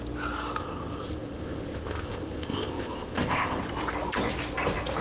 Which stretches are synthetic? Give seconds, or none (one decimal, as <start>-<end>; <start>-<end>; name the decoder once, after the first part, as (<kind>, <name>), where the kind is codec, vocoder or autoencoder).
0.6-3.6 (codec, ZipCodec)